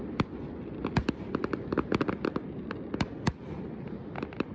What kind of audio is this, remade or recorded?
recorded